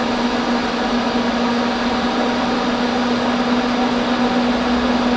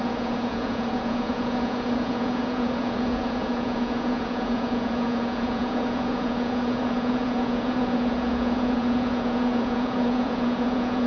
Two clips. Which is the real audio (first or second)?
first